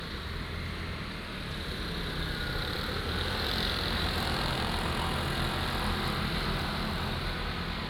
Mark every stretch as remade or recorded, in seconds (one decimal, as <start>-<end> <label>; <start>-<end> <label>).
0.0-2.6 recorded; 2.6-4.9 remade; 4.9-7.9 recorded